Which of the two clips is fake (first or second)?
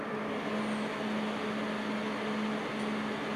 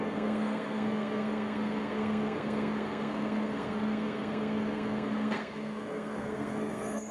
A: second